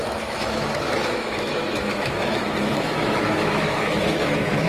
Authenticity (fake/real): fake